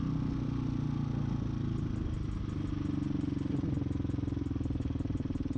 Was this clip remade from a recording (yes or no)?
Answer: no